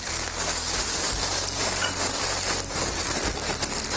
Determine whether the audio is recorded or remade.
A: recorded